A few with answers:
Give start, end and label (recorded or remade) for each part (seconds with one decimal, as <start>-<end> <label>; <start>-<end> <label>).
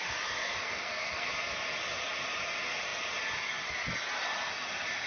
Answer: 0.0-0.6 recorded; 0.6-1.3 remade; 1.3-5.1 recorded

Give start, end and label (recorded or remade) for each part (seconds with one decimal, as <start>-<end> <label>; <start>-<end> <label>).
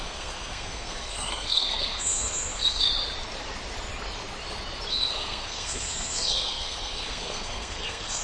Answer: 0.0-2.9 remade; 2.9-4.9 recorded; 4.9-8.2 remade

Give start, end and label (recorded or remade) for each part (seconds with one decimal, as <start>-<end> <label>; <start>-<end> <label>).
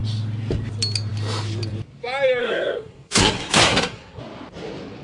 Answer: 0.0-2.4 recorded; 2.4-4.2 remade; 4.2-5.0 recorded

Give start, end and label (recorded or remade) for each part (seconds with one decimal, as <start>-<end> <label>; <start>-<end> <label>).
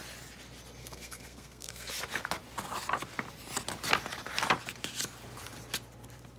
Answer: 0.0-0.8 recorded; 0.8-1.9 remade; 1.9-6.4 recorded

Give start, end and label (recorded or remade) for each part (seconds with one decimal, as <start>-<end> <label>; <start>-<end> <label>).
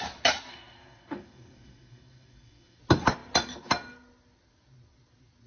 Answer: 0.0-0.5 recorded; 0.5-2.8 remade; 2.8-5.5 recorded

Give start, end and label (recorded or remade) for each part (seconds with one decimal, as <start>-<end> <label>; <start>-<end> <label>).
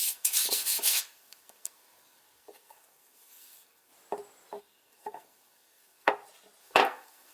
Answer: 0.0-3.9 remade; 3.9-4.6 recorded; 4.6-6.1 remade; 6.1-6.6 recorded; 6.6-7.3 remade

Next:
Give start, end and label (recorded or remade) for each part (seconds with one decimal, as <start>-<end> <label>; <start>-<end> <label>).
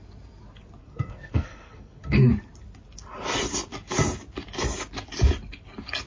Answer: 0.0-0.8 recorded; 0.8-2.3 remade; 2.3-6.1 recorded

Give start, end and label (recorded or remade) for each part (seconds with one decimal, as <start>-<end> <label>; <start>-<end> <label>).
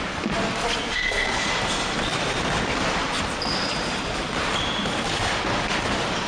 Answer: 0.0-0.9 recorded; 0.9-1.5 remade; 1.5-6.3 recorded